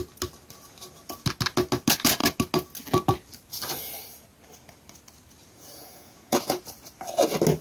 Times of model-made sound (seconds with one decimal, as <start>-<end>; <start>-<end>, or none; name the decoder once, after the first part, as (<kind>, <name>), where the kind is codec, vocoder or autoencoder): 5.4-6.6 (vocoder, Vocos)